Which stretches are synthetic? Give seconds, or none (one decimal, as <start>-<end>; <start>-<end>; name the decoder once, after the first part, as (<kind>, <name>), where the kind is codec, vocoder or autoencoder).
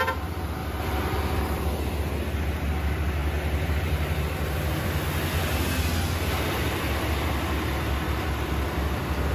0.6-1.6 (vocoder, BigVGAN v2)